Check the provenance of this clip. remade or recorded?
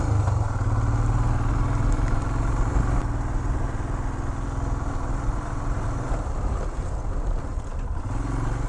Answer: recorded